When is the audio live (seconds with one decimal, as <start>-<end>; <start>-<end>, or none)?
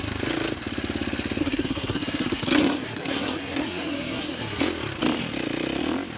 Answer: 0.0-1.4; 4.6-6.2